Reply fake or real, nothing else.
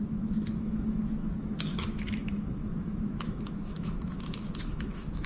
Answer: fake